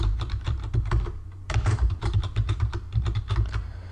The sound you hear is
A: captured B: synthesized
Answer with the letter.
B